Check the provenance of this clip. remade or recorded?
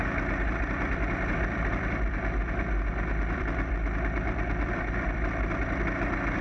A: remade